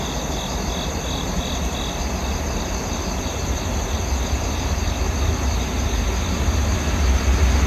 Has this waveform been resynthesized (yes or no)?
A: no